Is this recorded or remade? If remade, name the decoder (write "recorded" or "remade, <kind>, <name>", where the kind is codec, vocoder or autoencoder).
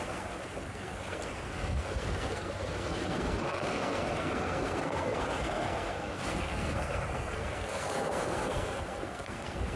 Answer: remade, codec, SNAC